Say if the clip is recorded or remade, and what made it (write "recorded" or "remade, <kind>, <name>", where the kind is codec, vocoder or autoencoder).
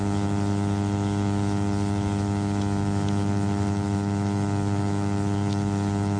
remade, autoencoder, DAC-VAE